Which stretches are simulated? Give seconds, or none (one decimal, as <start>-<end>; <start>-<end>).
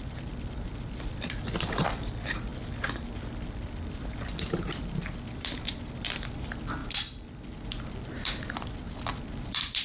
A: 0.0-2.5; 3.9-9.8